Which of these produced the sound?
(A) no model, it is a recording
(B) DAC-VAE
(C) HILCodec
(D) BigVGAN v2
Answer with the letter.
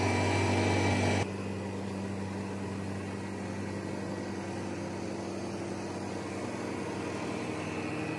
A